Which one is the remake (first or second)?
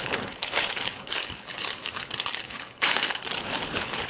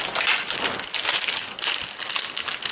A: first